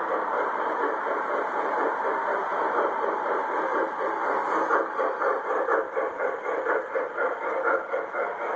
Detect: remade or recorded remade